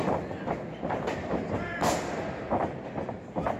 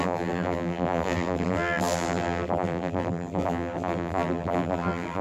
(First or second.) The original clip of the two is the first